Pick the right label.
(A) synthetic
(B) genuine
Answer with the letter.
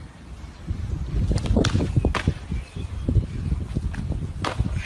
B